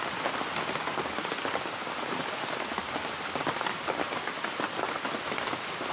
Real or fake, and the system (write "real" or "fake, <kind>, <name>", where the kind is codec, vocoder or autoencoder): real